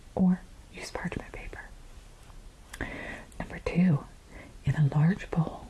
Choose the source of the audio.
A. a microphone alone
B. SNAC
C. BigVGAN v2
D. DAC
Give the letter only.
A